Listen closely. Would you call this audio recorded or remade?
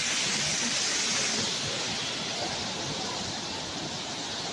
recorded